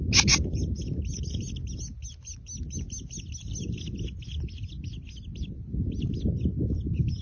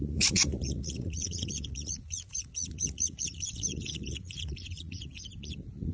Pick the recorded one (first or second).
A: first